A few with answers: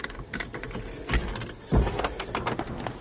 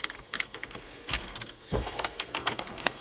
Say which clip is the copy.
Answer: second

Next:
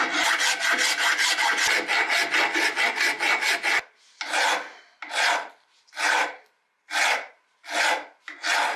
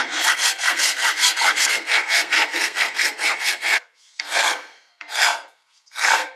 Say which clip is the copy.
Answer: second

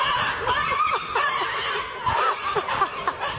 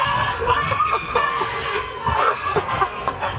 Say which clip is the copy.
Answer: second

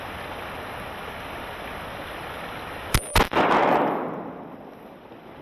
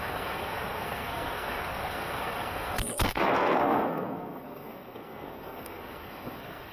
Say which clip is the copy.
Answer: second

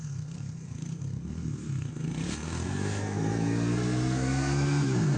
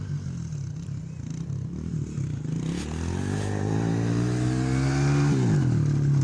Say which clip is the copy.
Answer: first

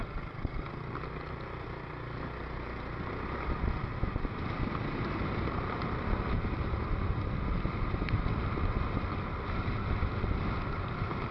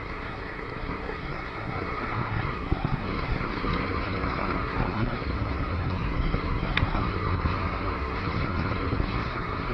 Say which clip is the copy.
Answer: second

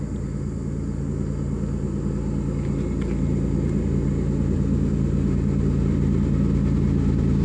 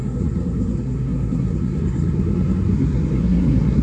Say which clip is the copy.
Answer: second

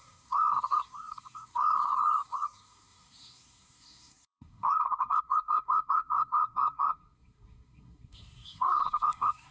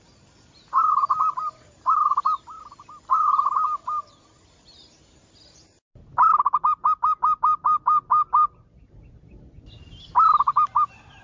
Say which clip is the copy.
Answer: first